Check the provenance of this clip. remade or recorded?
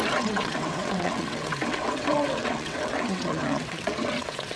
remade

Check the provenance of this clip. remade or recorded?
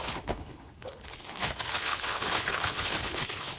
remade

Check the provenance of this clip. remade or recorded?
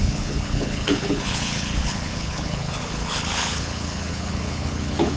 remade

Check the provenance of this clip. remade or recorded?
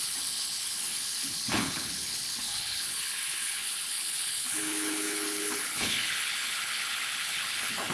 remade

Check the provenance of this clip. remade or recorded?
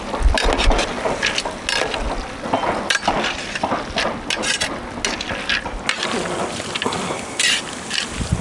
recorded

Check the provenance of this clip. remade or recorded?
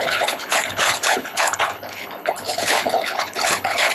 remade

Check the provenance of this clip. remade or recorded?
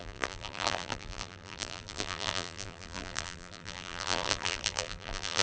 remade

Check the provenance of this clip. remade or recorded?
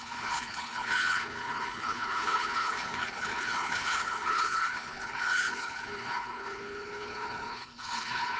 remade